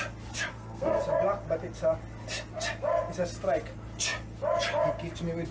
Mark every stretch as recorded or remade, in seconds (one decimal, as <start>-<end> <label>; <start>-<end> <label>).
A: 0.0-0.5 recorded; 0.5-1.0 remade; 1.0-5.5 recorded